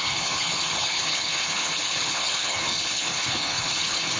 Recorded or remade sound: remade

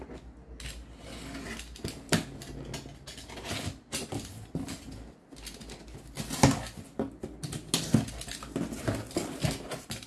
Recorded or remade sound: recorded